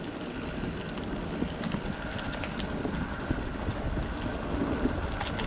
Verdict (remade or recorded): recorded